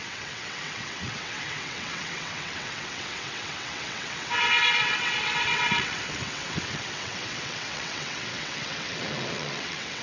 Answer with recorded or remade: remade